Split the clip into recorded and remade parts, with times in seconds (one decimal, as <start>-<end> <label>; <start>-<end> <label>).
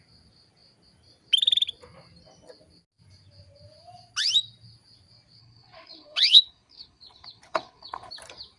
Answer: 0.0-5.4 recorded; 5.4-8.1 remade; 8.1-8.6 recorded